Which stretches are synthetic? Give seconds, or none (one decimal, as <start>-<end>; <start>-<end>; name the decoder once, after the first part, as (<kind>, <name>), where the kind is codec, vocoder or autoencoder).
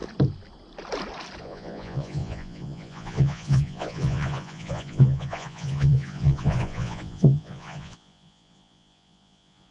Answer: 1.4-9.7 (vocoder, Vocos)